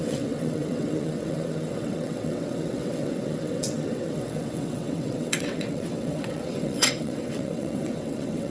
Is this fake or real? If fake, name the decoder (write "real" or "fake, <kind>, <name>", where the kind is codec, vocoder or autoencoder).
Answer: fake, vocoder, WaveNeXt